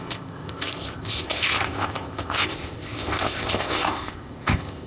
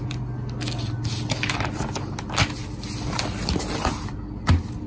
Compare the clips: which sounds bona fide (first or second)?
second